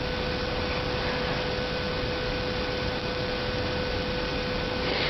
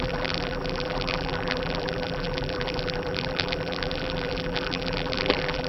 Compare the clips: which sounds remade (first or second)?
second